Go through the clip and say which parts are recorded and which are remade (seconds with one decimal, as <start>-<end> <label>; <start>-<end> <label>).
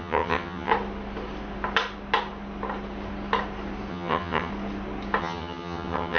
0.0-0.7 remade; 0.7-3.9 recorded; 3.9-4.5 remade; 4.5-5.2 recorded; 5.2-6.2 remade